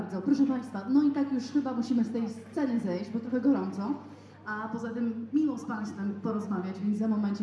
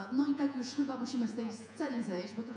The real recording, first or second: first